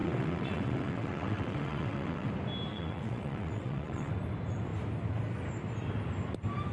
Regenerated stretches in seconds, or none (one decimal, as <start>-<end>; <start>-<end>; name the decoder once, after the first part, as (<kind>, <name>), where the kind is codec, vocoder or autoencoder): 0.0-2.3 (vocoder, WaveNeXt); 2.7-4.1